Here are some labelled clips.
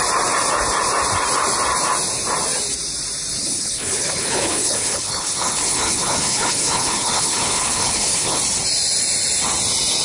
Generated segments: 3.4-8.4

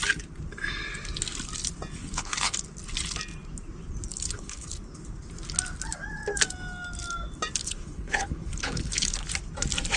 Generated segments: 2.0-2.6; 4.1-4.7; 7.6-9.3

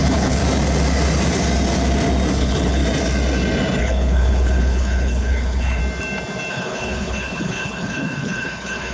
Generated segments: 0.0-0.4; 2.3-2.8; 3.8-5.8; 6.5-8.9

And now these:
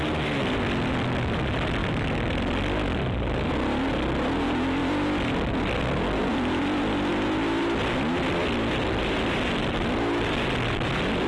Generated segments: none